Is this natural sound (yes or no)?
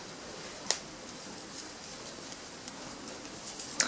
yes